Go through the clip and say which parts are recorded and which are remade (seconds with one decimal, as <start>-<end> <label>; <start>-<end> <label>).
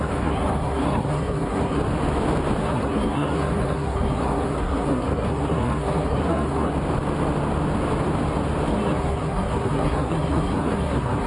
0.0-1.8 remade; 1.8-2.6 recorded; 2.6-6.7 remade; 6.7-8.7 recorded; 8.7-11.3 remade